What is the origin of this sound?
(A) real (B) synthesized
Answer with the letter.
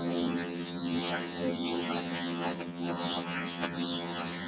B